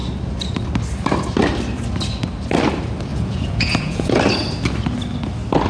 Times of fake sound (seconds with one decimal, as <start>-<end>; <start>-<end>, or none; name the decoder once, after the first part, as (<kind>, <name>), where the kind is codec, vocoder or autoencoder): 3.1-4.2 (vocoder, Vocos)